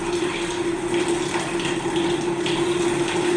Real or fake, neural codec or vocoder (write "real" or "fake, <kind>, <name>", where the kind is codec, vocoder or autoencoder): real